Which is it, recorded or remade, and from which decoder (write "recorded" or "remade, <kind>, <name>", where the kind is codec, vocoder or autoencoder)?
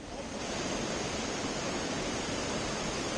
recorded